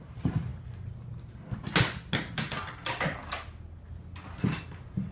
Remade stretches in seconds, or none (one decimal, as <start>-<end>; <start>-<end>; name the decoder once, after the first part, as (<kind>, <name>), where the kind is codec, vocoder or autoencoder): none